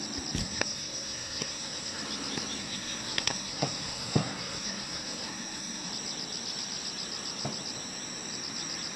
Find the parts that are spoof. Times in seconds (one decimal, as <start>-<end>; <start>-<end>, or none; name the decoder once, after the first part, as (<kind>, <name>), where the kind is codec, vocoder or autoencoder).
0.4-2.0 (codec, SNAC); 2.6-5.9